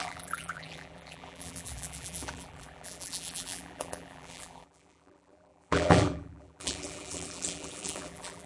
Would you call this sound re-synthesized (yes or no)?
yes